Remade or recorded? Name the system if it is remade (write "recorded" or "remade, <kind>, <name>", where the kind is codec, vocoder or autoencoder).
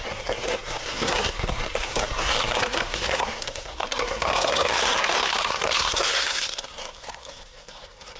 remade, codec, SNAC